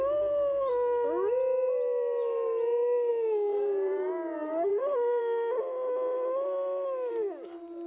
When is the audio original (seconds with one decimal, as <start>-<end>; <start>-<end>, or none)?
0.0-3.5; 4.1-4.7; 5.2-7.9